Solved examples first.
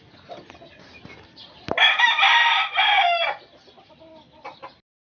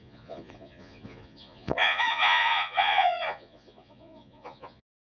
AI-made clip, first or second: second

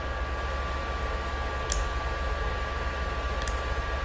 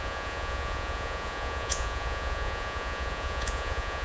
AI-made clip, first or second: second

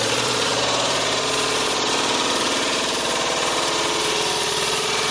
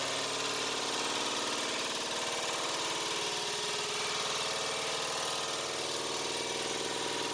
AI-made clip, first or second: first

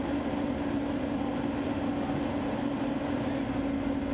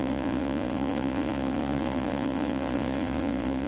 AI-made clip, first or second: second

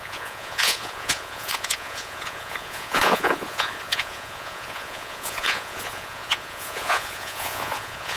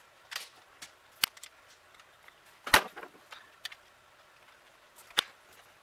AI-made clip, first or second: first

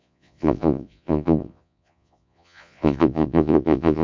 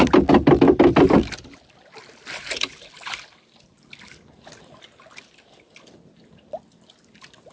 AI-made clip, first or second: first